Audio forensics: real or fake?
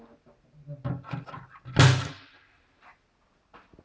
real